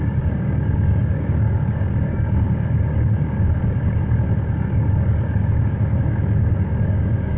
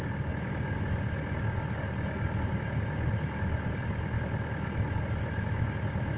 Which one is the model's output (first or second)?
first